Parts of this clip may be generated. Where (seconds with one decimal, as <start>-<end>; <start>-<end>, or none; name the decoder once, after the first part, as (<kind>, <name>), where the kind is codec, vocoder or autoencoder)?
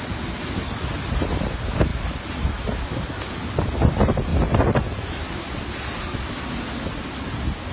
4.3-5.6 (vocoder, BigVGAN v2)